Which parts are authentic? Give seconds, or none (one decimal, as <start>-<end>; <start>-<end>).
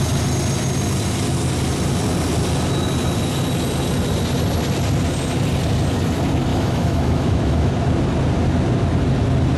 0.0-6.5; 7.7-9.6